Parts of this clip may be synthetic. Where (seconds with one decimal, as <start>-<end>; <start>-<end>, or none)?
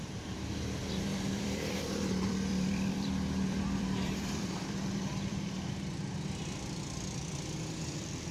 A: 1.1-5.7